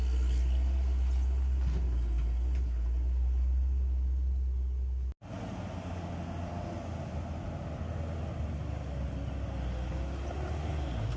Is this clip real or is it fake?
real